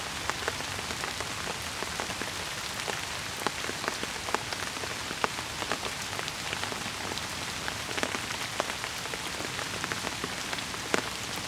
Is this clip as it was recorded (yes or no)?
yes